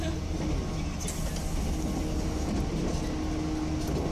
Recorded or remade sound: recorded